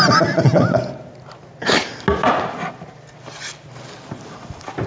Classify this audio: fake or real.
real